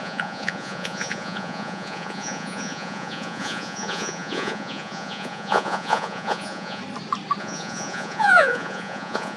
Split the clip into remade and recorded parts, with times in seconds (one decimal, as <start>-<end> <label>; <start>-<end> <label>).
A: 0.0-6.8 remade; 6.8-7.4 recorded; 7.4-9.4 remade

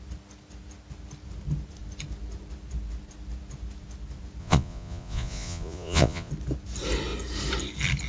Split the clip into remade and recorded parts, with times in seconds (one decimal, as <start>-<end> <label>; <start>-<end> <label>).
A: 0.0-4.4 recorded; 4.4-6.3 remade; 6.3-8.1 recorded

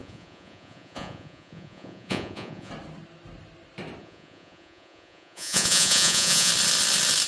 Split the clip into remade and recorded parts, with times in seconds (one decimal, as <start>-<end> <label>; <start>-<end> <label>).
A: 0.0-2.7 remade; 2.7-4.0 recorded; 4.0-6.5 remade; 6.5-7.3 recorded

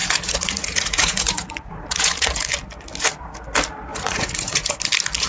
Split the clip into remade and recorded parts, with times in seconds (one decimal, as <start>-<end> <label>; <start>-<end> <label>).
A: 0.0-2.5 remade; 2.5-3.9 recorded; 3.9-4.7 remade; 4.7-5.3 recorded